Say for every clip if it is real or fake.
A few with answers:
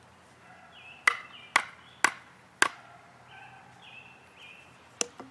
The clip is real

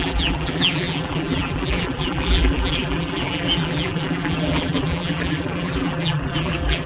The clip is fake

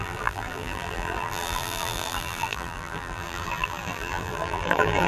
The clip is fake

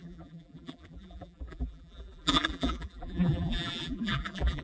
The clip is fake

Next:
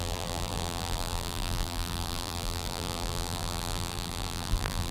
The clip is fake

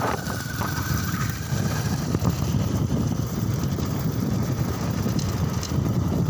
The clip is fake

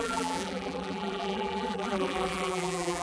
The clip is fake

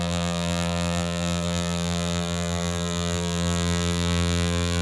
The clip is fake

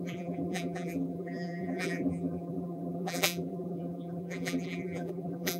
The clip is fake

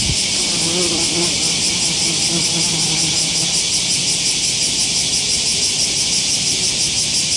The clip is real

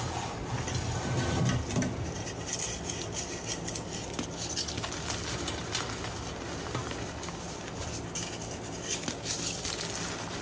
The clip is real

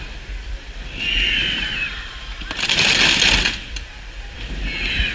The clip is real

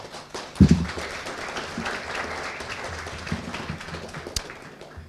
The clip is real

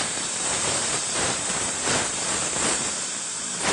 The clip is fake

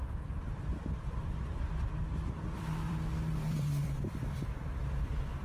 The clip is fake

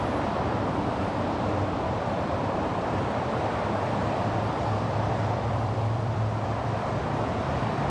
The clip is fake